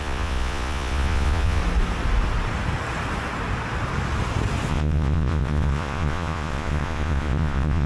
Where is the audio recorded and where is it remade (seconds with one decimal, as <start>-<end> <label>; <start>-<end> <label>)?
0.0-1.6 remade; 1.6-4.7 recorded; 4.7-7.9 remade